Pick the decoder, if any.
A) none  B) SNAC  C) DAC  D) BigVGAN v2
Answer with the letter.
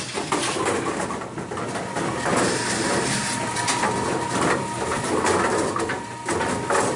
A